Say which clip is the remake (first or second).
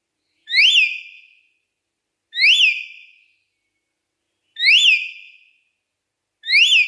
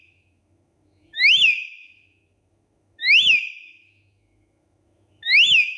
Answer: second